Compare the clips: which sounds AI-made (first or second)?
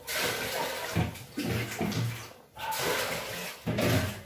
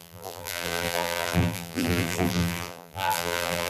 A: second